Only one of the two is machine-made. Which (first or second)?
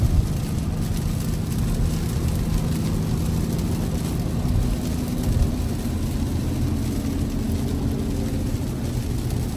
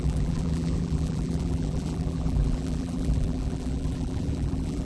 second